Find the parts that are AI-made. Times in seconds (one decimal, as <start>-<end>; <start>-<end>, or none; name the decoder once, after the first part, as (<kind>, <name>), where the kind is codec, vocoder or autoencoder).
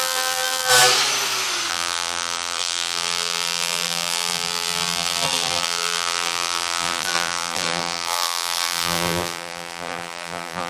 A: 0.0-0.7 (vocoder, BigVGAN v2); 1.7-10.7